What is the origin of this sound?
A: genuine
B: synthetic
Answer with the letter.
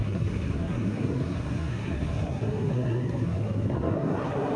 B